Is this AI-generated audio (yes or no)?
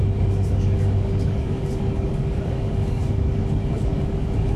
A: yes